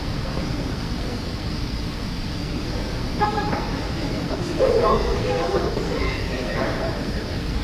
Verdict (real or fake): fake